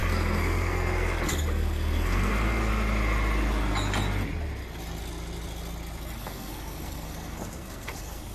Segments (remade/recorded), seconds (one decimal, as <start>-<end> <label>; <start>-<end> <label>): 0.0-2.7 remade; 2.7-6.2 recorded; 6.2-8.3 remade